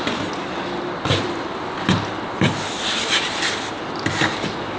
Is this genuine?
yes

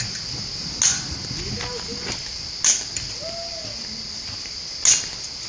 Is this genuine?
yes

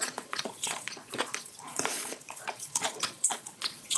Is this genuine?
no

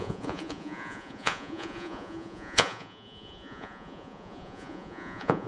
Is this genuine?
no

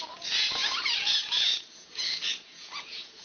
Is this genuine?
no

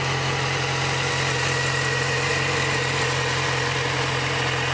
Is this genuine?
yes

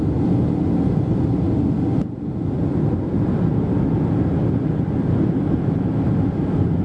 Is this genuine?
yes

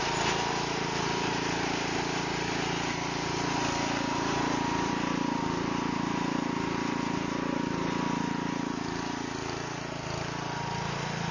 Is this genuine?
yes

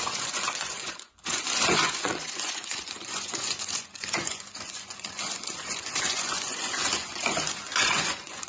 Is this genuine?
no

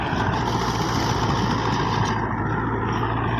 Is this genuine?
yes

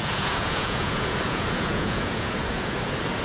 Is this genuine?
no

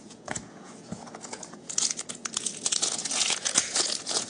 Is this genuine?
no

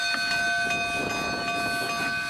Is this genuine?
yes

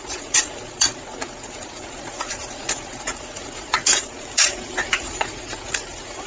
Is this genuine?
no